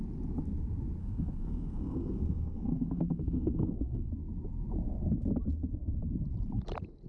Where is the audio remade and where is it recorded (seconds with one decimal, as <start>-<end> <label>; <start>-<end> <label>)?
0.0-1.0 recorded; 1.0-4.1 remade; 4.1-7.1 recorded